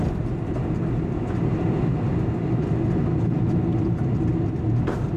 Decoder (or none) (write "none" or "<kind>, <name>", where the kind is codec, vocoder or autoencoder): none